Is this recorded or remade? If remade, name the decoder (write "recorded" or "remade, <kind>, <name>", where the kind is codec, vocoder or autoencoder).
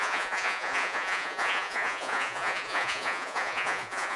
remade, vocoder, Vocos